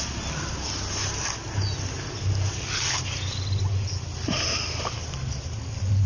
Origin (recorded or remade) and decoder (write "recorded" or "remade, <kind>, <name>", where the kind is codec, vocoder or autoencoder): recorded